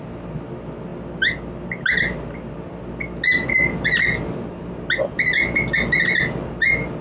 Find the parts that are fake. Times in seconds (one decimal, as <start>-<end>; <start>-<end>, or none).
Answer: none